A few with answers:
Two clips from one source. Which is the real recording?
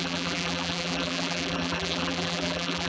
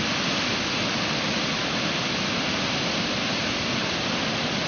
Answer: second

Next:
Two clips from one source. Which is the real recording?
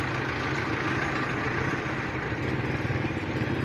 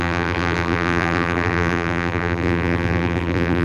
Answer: first